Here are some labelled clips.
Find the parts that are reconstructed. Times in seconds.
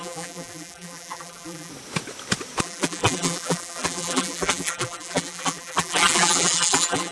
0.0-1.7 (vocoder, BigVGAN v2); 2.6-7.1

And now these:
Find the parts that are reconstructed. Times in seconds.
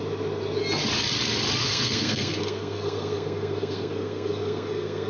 1.6-5.1 (codec, SNAC)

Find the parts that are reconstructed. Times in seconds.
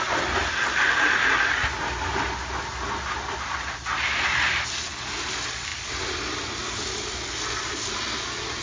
none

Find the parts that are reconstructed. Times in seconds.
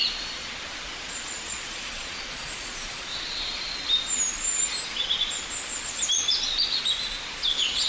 0.0-3.8 (vocoder, Vocos); 7.5-7.9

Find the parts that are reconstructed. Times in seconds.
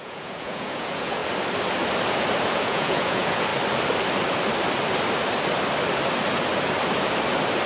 0.0-1.2 (vocoder, Vocos); 2.4-3.5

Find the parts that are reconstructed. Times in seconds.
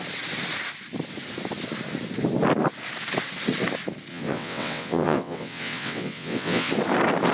4.1-6.7 (vocoder, WaveNeXt)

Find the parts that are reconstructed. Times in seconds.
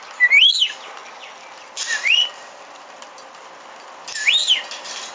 none